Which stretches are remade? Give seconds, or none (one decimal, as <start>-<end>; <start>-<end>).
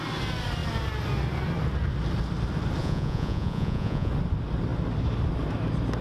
2.8-4.1